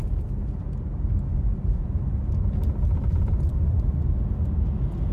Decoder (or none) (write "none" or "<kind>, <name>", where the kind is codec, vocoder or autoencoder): none